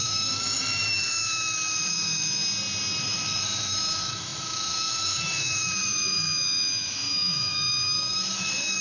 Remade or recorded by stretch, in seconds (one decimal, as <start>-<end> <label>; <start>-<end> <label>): 0.0-2.4 remade; 2.4-3.0 recorded; 3.0-8.8 remade